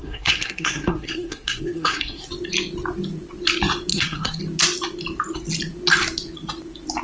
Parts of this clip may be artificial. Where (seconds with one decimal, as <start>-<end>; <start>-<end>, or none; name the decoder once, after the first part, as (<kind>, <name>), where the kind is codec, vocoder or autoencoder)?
0.0-2.3 (codec, SNAC); 3.9-4.4